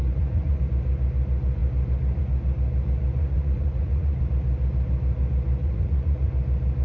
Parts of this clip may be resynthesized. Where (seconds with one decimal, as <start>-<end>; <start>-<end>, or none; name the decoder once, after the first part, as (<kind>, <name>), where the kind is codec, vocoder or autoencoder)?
0.0-0.6 (vocoder, Vocos); 3.2-4.2; 5.6-6.3